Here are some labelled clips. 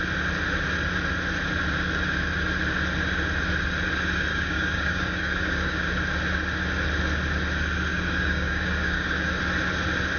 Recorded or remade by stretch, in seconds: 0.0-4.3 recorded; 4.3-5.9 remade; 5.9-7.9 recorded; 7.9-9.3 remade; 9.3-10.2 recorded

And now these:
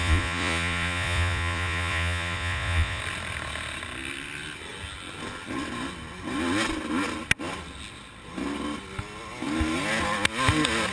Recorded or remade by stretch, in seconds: 0.0-3.0 remade; 3.0-10.9 recorded